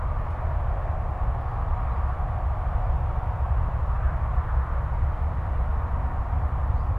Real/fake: real